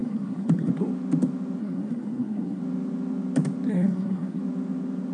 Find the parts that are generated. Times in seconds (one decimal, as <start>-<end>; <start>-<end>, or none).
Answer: 0.0-0.7; 1.6-2.6; 3.7-4.4